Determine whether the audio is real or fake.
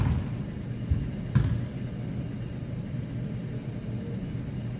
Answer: real